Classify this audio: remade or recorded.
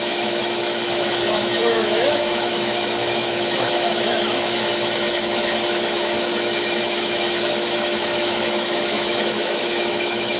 remade